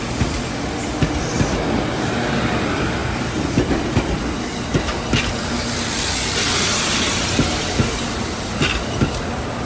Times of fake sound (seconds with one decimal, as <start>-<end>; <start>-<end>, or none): none

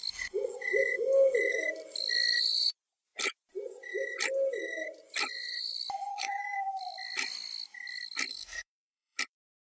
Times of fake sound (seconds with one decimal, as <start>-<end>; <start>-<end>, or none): 6.1-6.8; 8.3-9.2